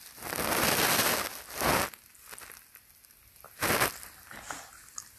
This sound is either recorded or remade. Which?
recorded